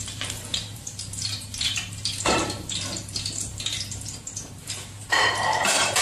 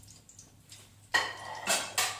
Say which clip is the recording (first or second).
second